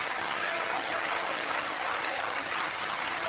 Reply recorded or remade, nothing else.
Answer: remade